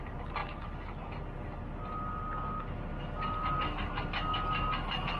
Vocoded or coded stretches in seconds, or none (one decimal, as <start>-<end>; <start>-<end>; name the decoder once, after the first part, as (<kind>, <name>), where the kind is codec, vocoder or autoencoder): none